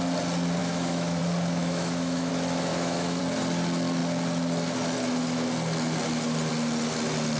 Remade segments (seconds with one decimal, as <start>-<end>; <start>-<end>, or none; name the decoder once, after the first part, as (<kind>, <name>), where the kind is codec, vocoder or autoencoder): 0.6-1.2 (autoencoder, DAC-VAE); 1.6-2.3; 2.7-3.2